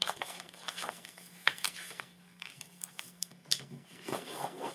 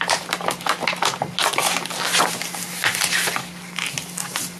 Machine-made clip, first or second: first